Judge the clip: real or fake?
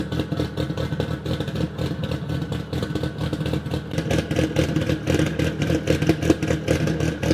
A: real